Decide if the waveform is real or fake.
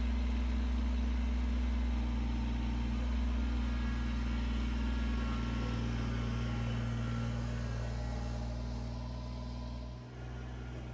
real